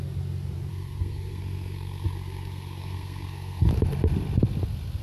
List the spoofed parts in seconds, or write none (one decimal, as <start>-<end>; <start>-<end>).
0.7-3.7